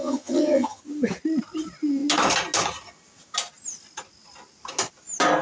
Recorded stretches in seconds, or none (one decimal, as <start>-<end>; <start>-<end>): 0.8-5.4

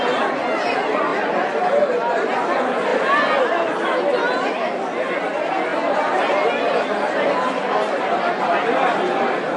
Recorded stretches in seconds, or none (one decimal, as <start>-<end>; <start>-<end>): 0.0-9.6

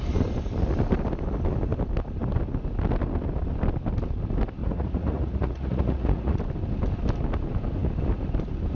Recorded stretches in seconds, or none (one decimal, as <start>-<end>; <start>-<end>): 0.0-4.6; 6.4-8.7